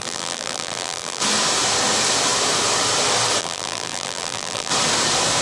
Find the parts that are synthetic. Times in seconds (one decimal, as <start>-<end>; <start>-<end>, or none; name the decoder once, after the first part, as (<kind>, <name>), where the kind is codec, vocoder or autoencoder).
0.0-1.2 (vocoder, BigVGAN v2); 3.4-4.7